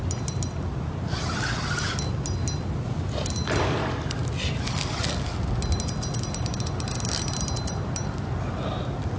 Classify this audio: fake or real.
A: real